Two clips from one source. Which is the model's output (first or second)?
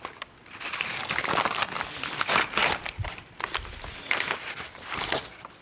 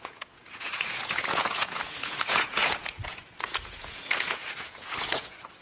second